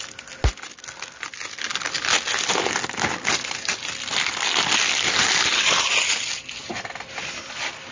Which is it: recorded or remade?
recorded